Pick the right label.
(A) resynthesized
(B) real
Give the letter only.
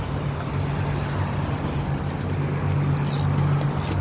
B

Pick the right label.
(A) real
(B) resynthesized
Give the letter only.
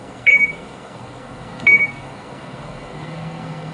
B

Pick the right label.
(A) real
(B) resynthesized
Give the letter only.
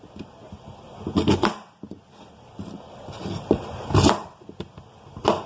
A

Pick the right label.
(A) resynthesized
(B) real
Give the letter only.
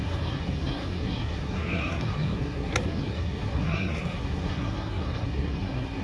A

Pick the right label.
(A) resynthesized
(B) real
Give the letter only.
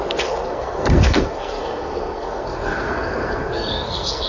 A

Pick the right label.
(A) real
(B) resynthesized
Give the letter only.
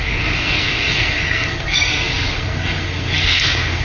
B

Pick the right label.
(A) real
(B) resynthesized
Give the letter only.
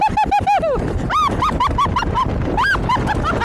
A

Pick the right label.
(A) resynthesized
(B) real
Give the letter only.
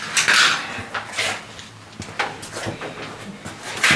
B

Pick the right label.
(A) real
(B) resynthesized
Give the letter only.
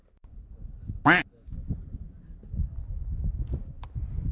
A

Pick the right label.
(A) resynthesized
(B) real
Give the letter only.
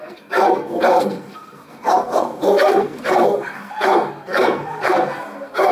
A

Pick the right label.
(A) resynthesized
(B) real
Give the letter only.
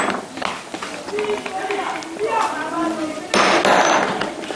B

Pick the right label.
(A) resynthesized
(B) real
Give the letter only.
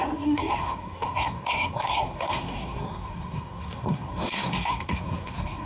A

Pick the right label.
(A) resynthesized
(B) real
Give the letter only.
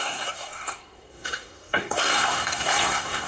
A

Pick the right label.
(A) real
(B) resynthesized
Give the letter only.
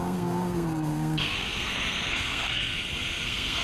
B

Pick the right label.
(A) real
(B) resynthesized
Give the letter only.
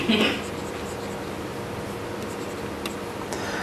A